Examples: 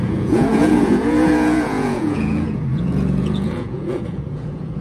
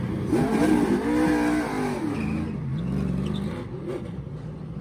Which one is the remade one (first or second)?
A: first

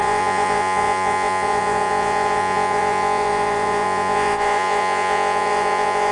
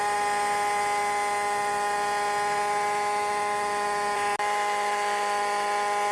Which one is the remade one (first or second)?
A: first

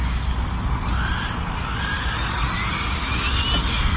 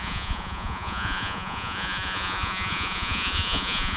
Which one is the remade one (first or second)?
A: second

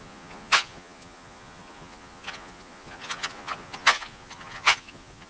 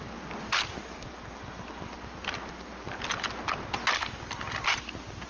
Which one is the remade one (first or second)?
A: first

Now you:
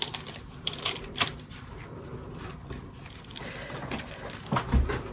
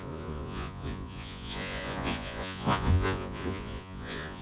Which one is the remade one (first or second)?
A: second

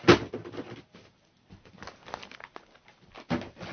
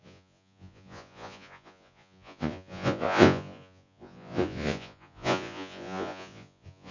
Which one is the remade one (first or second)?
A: second